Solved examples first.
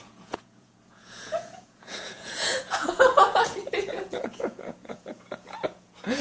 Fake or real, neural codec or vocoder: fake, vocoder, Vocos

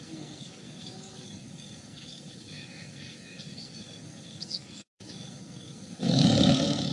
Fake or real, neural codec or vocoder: fake, codec, SNAC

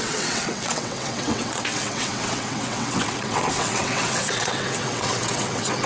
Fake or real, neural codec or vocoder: fake, vocoder, WaveNeXt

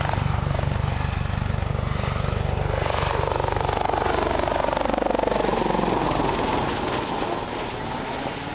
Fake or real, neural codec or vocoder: real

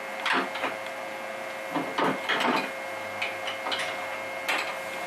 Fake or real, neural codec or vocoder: real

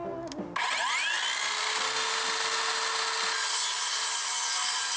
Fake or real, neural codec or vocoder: real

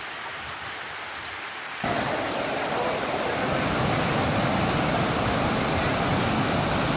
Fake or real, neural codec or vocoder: real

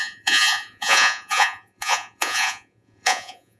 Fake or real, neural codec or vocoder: fake, vocoder, Vocos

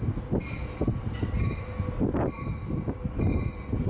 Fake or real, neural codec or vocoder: real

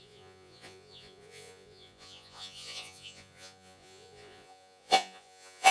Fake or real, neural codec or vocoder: fake, vocoder, Vocos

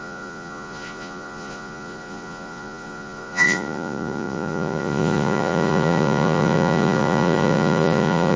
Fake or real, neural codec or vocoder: fake, vocoder, Vocos